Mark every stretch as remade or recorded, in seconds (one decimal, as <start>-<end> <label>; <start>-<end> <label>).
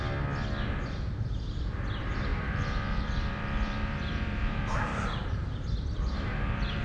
0.0-2.3 recorded; 2.3-6.8 remade